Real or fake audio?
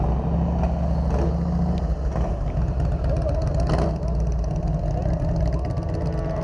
real